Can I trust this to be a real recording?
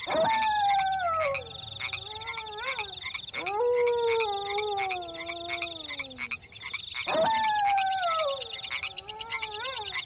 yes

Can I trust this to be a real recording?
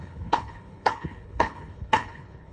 no